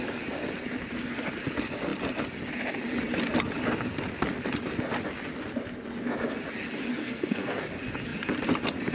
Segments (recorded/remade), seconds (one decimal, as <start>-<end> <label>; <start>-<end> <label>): 0.0-7.0 recorded; 7.0-7.6 remade; 7.6-8.9 recorded